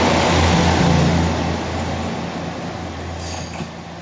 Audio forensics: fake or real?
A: real